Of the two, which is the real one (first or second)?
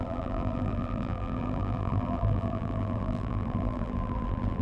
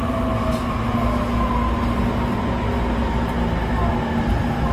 second